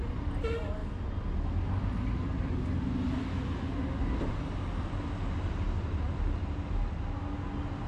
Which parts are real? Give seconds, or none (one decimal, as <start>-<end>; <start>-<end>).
0.0-7.9